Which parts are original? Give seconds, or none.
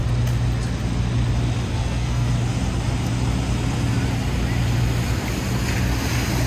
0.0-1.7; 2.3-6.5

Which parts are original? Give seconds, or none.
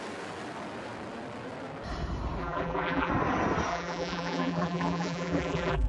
0.0-2.4; 3.1-3.7